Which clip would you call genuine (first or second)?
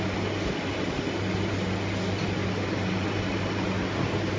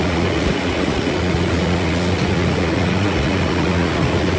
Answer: first